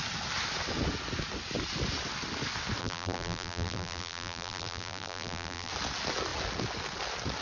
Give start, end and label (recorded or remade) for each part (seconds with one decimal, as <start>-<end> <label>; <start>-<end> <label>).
0.0-2.8 recorded; 2.8-5.7 remade; 5.7-7.4 recorded